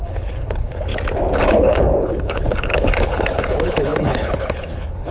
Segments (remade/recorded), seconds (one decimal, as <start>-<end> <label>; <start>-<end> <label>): 0.0-0.9 remade; 0.9-1.5 recorded; 1.5-5.1 remade